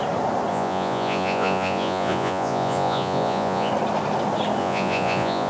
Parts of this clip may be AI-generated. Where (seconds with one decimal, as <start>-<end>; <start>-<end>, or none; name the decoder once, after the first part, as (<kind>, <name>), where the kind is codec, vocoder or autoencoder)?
0.5-3.7 (vocoder, Vocos); 4.6-5.5